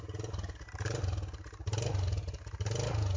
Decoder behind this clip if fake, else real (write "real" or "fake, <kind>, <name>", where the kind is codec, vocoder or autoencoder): real